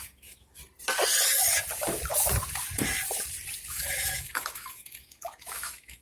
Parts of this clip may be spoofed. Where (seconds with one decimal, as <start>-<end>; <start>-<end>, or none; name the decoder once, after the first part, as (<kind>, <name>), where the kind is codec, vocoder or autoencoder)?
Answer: 0.0-0.6 (autoencoder, DAC-VAE); 3.7-6.0